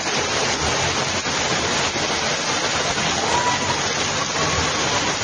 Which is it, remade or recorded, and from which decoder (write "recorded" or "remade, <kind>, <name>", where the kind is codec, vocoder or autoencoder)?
recorded